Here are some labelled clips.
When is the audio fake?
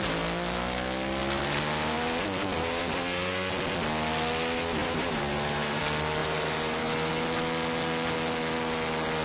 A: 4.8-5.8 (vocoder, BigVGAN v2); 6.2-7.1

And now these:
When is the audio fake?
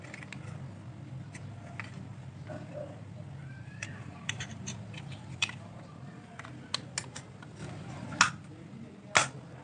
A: 3.4-6.3 (vocoder, BigVGAN v2); 7.6-8.2